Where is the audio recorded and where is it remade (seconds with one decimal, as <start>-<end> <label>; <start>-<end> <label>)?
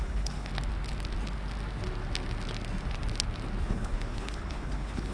0.0-0.5 remade; 0.5-3.6 recorded; 3.6-5.1 remade